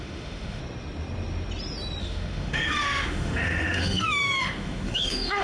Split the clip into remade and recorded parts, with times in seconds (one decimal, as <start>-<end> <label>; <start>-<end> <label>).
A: 0.0-0.6 remade; 0.6-2.0 recorded; 2.0-5.4 remade